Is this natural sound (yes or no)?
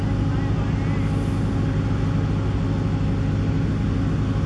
yes